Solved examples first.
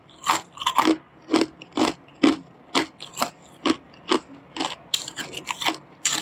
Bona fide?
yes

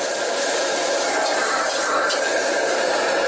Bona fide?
no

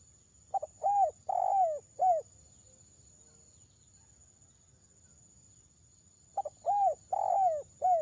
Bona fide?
yes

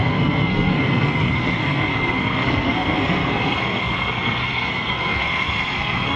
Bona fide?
no